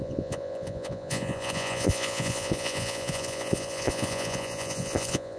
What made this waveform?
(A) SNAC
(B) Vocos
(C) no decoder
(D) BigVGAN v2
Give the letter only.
B